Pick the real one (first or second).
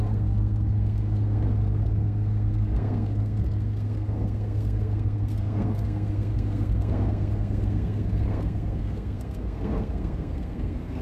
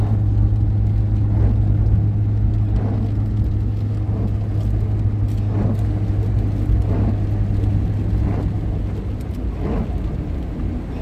second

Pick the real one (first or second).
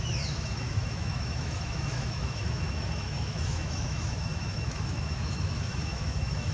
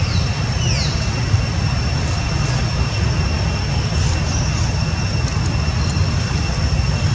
second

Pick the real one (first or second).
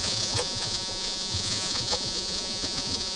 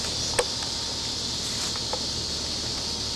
second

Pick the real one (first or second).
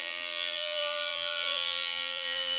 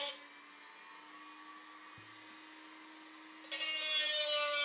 second